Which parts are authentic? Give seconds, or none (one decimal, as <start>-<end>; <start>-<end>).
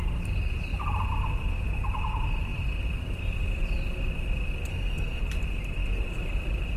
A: 0.0-4.7; 5.2-6.8